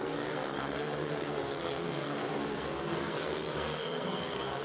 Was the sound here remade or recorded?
remade